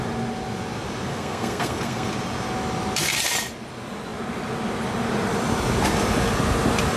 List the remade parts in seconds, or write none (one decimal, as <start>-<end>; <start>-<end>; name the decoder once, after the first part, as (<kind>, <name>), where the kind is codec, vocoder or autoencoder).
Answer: 1.1-2.1 (codec, SNAC)

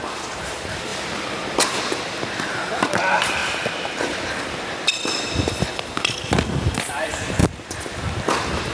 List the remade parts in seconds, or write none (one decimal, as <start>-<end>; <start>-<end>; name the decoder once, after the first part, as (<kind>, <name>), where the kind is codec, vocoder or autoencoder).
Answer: 0.0-3.4 (vocoder, BigVGAN v2); 4.6-7.4

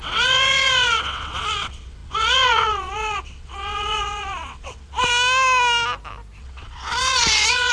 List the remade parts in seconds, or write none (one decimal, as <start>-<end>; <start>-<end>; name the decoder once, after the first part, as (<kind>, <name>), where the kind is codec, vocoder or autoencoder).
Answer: 0.0-5.1 (vocoder, WaveNeXt); 6.4-7.7

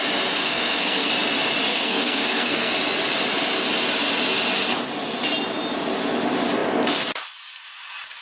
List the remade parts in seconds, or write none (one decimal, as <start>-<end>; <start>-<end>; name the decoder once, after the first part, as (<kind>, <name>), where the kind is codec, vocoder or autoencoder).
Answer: 0.4-1.1 (codec, SNAC); 1.7-2.7

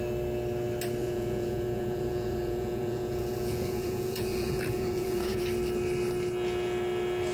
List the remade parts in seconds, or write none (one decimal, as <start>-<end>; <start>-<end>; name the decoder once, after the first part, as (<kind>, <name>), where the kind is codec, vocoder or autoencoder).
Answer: 1.0-5.4 (vocoder, Vocos)

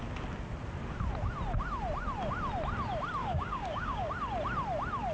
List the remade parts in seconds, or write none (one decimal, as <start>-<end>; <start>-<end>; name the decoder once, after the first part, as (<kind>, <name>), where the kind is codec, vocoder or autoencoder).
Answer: 3.2-4.1 (codec, DAC)

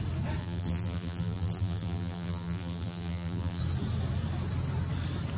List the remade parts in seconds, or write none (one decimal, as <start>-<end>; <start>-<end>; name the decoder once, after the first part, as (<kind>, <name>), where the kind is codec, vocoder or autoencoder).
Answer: 0.4-3.6 (vocoder, BigVGAN v2)

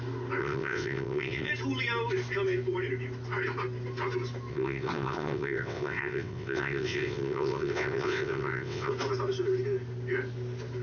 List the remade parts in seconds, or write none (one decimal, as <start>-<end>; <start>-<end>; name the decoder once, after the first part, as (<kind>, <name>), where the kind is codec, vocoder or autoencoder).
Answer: 0.4-1.5 (vocoder, WaveNeXt); 4.5-8.9